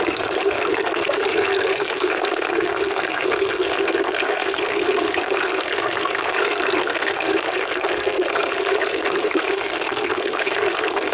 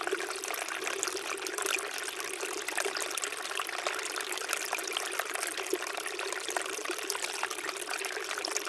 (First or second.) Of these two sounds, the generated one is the first